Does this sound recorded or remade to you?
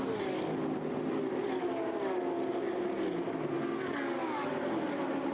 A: recorded